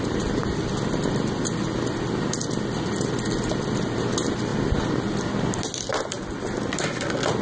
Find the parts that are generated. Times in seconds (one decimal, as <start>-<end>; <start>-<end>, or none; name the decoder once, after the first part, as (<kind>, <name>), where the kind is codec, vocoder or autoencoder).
none